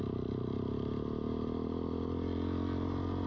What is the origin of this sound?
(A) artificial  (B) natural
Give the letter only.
B